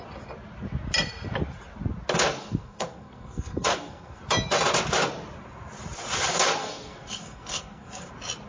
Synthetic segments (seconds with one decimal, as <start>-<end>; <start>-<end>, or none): 2.4-4.2; 6.6-8.1